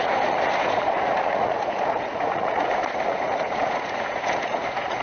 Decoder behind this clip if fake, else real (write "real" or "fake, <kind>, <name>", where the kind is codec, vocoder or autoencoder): fake, vocoder, Vocos